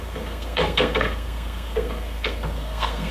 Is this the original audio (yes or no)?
no